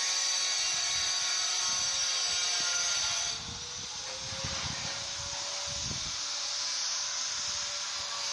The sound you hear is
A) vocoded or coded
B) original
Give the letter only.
B